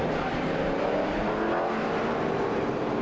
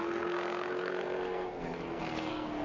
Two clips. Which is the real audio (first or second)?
first